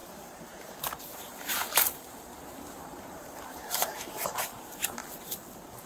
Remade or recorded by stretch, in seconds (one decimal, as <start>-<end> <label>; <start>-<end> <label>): 0.0-5.0 remade; 5.0-5.9 recorded